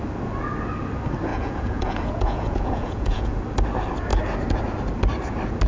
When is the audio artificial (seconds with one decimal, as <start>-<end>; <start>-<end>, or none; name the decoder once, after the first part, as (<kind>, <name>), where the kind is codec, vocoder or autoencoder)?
1.3-3.4 (vocoder, Vocos)